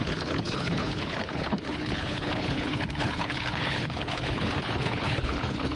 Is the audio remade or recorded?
remade